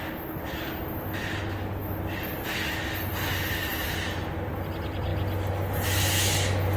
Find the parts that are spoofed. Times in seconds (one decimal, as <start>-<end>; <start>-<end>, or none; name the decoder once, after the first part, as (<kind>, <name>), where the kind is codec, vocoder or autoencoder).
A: none